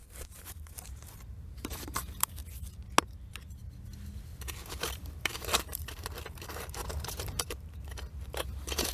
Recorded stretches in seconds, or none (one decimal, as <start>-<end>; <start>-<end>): 2.4-4.4